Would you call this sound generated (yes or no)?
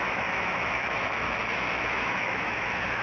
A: yes